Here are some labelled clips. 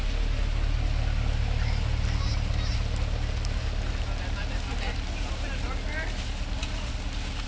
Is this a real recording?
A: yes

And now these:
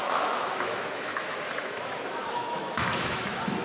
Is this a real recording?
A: no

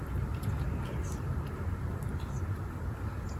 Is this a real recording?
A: yes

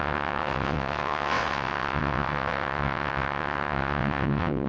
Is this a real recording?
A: no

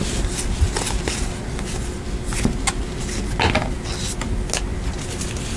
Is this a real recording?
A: yes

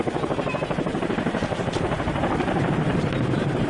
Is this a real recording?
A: no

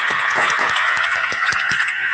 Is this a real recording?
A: no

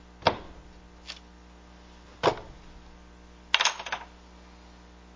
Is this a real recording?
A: yes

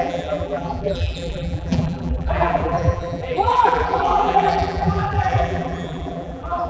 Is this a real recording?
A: no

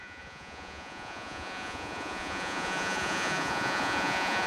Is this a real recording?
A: no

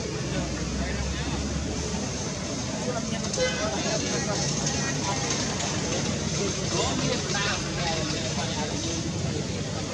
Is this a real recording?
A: yes